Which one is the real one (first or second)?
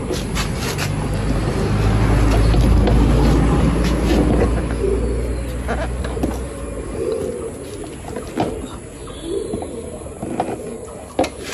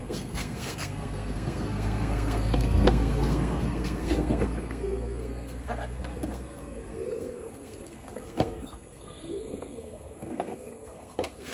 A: first